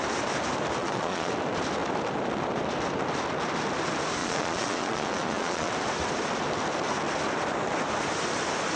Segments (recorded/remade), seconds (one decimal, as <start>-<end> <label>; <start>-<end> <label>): 0.0-0.8 recorded; 0.8-1.3 remade; 1.3-4.2 recorded; 4.2-5.7 remade; 5.7-8.8 recorded